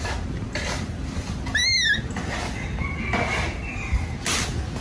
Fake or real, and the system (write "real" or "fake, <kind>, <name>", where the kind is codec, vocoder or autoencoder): real